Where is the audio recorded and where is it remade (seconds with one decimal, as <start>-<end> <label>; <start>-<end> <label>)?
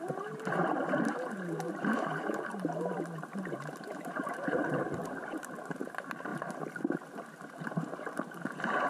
0.0-6.3 remade; 6.3-7.5 recorded; 7.5-8.9 remade